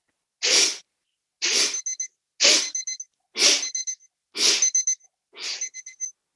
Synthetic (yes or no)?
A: no